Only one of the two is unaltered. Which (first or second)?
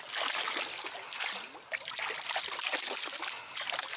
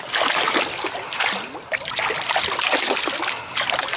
first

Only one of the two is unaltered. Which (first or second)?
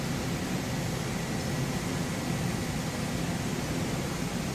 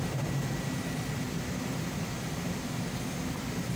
first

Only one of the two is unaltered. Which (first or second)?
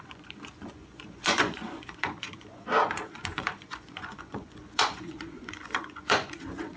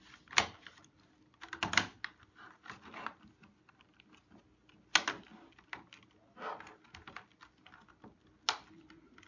second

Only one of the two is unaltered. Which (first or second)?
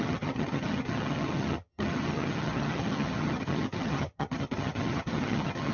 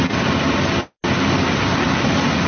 second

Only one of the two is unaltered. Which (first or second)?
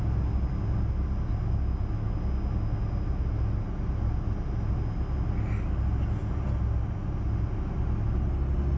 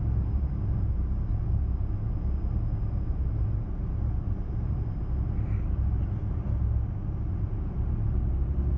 first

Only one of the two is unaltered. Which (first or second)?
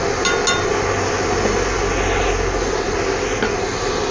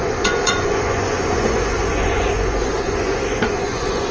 first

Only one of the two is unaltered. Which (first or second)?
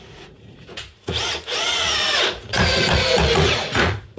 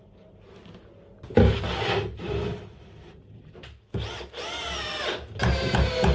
second